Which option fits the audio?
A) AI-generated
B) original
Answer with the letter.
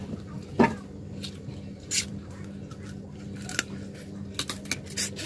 B